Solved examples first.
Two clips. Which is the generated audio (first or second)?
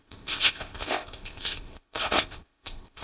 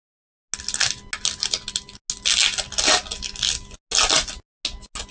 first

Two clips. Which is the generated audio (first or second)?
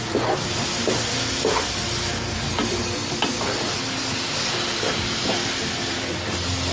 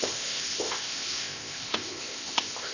second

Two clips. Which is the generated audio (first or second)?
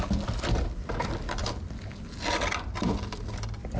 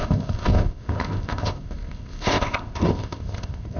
second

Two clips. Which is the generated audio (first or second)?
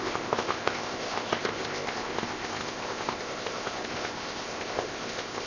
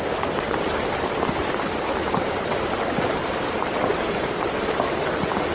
first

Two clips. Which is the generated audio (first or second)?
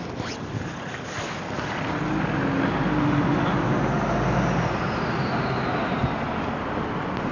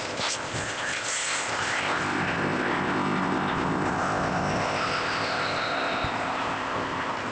second